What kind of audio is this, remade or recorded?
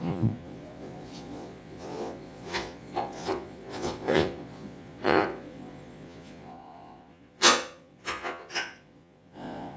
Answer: remade